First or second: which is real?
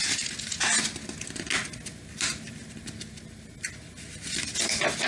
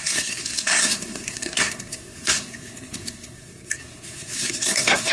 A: first